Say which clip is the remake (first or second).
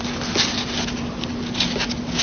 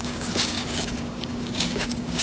second